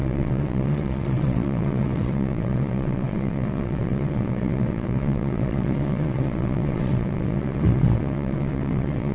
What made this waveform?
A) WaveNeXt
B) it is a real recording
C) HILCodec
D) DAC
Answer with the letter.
A